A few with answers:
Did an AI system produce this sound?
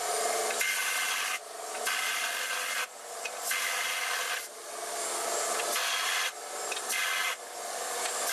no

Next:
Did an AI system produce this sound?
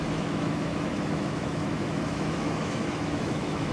yes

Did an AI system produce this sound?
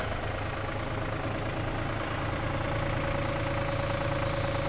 no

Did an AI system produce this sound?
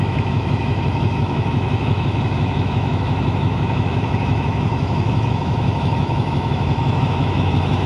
yes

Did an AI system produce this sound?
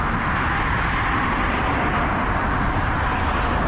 no